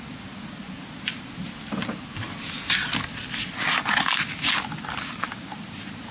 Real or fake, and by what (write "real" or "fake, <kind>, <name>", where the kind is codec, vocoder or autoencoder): real